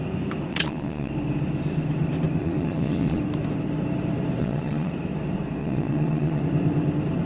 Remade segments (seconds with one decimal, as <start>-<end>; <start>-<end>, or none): 0.5-1.1; 2.4-3.2; 4.4-4.9; 5.6-6.4